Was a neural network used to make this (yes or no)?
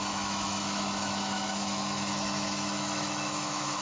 yes